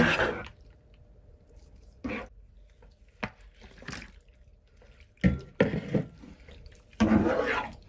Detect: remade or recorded recorded